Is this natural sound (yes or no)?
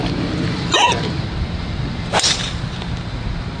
yes